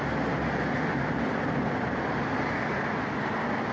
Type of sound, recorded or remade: recorded